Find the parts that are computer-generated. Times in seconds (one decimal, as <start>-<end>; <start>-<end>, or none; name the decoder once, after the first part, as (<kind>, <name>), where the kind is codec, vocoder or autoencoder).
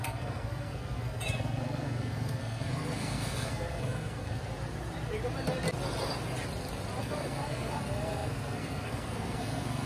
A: 0.0-4.4 (codec, SNAC); 7.0-9.9